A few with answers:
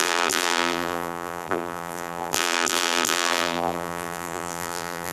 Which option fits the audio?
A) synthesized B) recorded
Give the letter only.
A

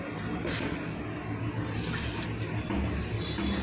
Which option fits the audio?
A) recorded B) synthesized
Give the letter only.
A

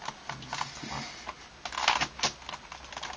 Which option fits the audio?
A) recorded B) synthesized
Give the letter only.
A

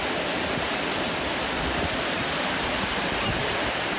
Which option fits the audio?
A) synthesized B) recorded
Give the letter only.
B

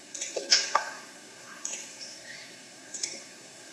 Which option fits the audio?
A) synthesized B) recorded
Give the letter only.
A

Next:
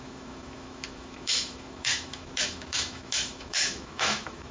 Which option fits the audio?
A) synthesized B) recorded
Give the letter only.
A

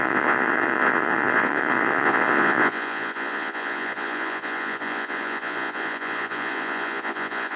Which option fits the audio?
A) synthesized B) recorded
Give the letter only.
A